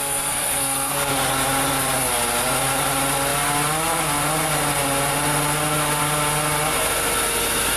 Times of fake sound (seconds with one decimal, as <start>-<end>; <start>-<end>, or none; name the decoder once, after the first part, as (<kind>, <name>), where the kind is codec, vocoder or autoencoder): 0.0-1.1 (codec, SNAC)